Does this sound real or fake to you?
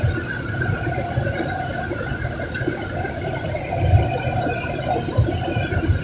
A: fake